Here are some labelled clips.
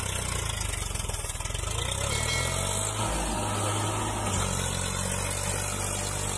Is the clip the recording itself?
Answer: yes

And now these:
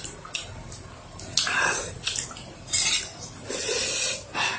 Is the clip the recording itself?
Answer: yes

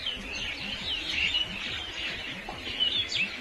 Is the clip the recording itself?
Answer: no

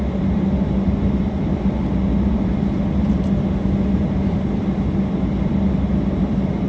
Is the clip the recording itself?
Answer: yes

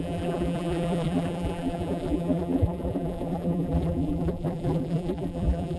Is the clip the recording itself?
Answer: no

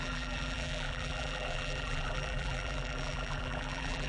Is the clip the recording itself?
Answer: no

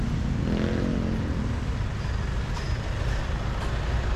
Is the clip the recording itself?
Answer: yes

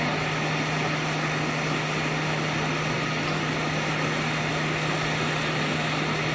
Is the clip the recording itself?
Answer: yes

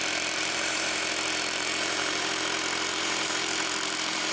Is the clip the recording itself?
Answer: no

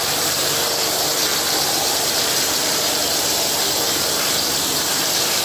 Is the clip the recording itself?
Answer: no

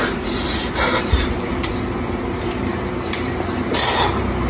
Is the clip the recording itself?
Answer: no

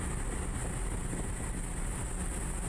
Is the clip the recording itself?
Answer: yes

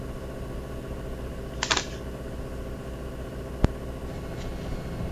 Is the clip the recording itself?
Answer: yes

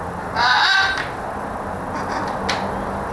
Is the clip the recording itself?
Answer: yes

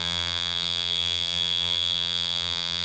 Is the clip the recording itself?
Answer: no